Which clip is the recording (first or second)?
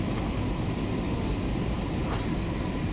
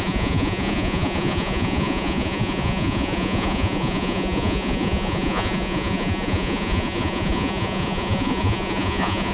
first